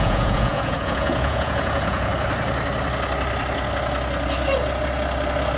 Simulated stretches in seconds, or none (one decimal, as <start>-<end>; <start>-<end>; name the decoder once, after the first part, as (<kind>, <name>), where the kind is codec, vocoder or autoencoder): 0.0-2.1 (vocoder, Vocos)